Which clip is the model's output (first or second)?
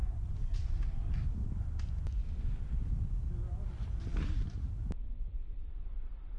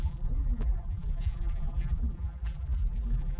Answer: second